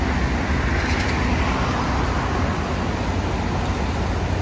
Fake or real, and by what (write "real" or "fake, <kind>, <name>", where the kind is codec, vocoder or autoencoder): real